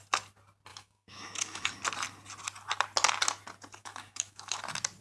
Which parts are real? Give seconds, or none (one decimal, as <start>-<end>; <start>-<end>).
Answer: 0.0-0.7; 1.8-3.8; 4.6-5.0